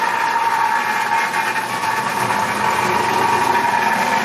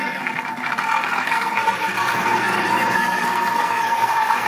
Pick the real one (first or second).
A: first